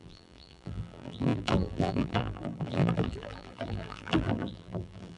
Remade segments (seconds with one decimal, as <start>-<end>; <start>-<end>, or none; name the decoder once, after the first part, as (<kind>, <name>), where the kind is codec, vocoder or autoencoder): 0.0-5.2 (vocoder, BigVGAN v2)